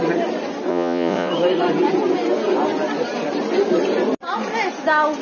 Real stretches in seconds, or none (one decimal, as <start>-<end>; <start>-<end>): 0.0-0.7; 1.3-5.2